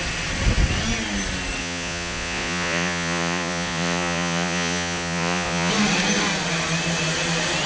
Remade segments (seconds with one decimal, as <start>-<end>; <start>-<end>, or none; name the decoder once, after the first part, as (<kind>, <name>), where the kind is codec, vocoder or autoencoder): 1.6-5.7 (vocoder, Vocos)